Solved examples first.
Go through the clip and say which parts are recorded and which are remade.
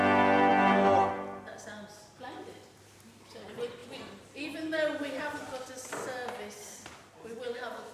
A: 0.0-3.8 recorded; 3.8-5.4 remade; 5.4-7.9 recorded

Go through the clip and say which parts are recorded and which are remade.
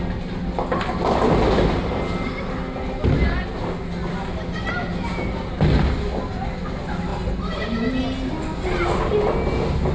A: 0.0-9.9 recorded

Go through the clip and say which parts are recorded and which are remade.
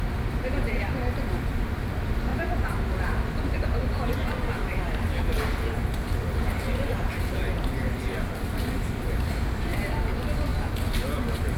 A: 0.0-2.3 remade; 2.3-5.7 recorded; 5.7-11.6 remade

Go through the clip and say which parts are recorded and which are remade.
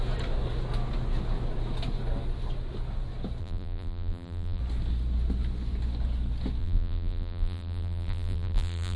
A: 0.0-3.4 recorded; 3.4-4.6 remade; 4.6-6.6 recorded; 6.6-9.0 remade